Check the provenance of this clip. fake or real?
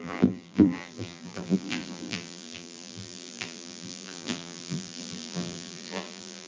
fake